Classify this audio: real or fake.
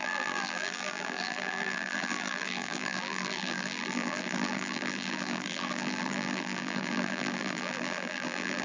fake